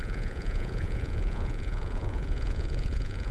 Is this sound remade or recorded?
remade